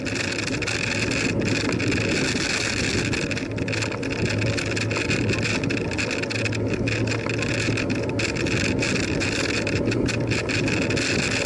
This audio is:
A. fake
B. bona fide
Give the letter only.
B